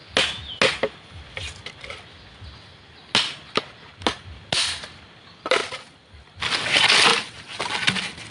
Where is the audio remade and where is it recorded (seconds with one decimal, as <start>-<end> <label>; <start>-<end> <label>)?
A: 0.0-7.1 recorded; 7.1-7.6 remade; 7.6-8.3 recorded